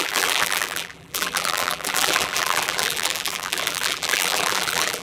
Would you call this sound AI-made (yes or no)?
yes